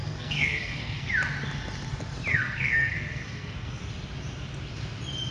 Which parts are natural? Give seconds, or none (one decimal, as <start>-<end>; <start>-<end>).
1.1-2.3; 3.8-5.3